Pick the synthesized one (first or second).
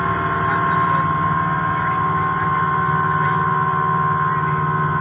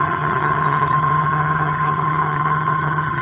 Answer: second